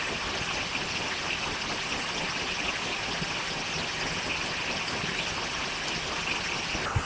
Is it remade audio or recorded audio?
recorded